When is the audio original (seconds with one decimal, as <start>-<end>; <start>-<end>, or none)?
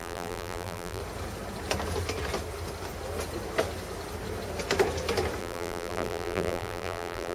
1.0-5.4